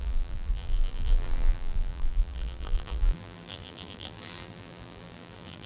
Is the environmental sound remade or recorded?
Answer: remade